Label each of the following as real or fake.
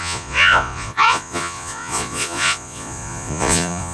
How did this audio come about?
fake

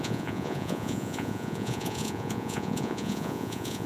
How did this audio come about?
fake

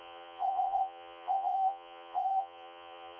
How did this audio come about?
fake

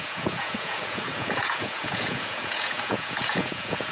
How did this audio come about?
fake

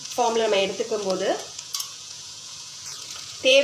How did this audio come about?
fake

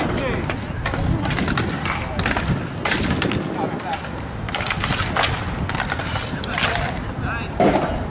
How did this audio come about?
real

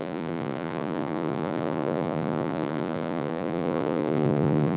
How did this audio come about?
fake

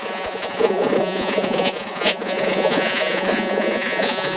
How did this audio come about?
fake